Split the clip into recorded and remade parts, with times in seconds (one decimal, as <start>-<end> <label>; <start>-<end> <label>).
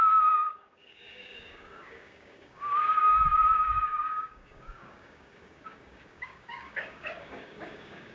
0.0-8.1 remade